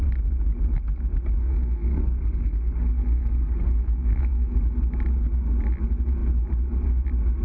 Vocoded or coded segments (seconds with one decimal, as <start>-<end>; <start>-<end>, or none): 1.4-4.6